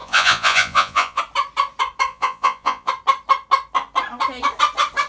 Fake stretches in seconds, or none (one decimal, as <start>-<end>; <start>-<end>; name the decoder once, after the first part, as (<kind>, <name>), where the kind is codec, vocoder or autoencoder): 0.0-1.2 (vocoder, Vocos); 2.1-2.9